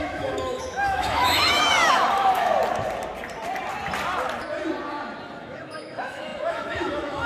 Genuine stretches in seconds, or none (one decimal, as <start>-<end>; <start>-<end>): 2.5-5.4